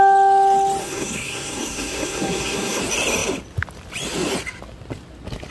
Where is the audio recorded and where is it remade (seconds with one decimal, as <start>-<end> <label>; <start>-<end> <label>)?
0.0-0.8 recorded; 0.8-2.8 remade; 2.8-5.5 recorded